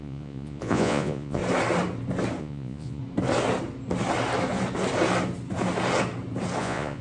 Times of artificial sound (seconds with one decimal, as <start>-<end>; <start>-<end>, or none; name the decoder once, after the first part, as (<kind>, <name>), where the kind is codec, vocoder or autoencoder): 0.0-1.4 (vocoder, Vocos); 2.4-3.0; 6.6-7.0